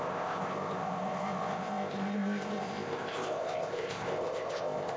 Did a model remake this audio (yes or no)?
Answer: yes